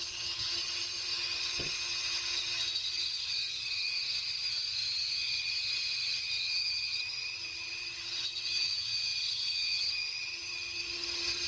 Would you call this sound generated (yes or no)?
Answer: yes